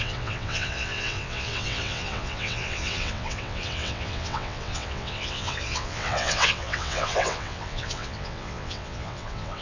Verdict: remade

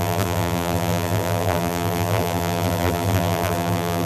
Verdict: remade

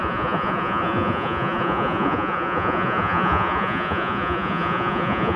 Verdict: remade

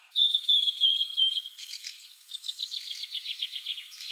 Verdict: remade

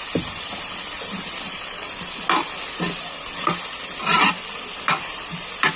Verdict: recorded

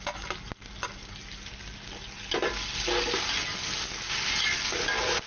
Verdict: recorded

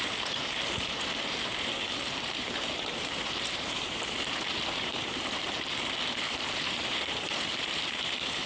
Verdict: remade